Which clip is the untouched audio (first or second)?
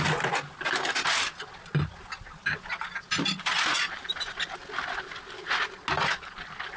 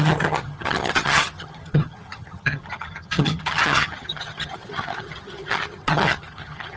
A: first